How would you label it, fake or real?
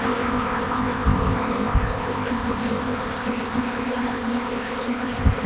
fake